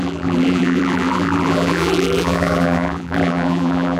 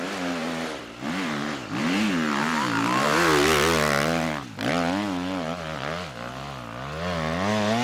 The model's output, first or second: first